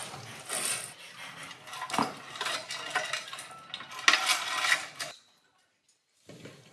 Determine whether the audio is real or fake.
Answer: real